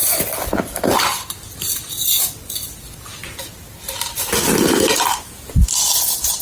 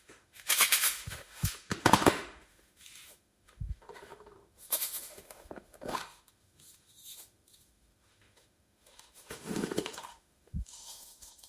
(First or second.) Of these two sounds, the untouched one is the first